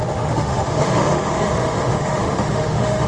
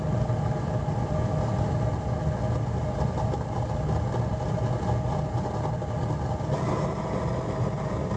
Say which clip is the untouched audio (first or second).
second